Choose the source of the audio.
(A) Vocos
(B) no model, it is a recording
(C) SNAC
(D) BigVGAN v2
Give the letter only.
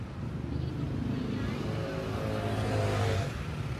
B